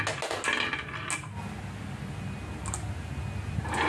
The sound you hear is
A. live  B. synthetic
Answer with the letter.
A